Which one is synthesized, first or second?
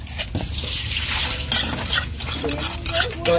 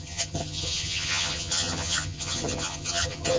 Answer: second